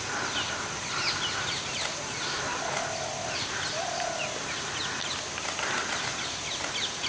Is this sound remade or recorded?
recorded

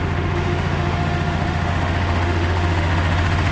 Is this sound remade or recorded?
remade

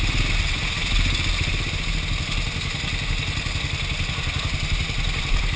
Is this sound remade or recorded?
recorded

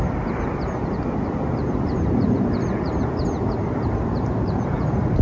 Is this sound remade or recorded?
recorded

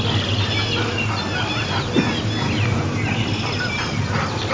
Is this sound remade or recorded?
recorded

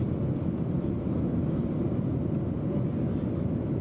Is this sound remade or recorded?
recorded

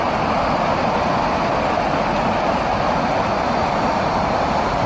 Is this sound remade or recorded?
recorded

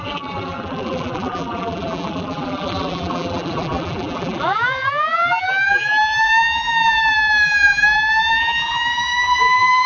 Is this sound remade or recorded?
remade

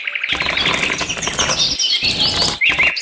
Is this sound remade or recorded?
recorded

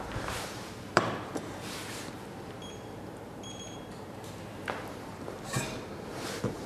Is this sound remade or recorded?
remade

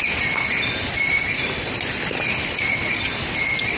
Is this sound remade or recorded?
recorded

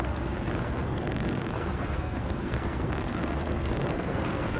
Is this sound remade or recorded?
remade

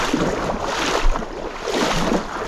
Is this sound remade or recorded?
recorded